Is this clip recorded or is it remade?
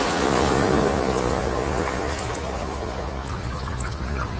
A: remade